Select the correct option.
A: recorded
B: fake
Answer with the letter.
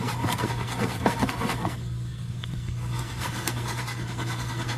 B